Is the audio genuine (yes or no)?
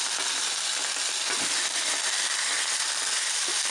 yes